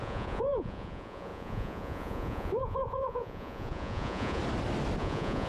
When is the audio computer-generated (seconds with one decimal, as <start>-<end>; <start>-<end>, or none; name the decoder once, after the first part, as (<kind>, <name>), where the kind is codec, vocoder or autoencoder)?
0.0-4.4 (vocoder, Vocos); 5.0-5.5